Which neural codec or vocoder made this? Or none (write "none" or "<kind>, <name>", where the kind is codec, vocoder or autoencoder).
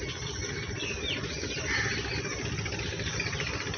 none